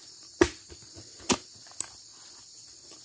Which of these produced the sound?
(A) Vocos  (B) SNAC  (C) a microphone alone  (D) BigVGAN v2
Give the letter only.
C